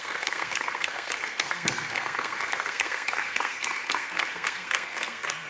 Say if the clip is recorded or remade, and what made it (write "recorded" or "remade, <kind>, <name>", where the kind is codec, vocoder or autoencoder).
remade, codec, SNAC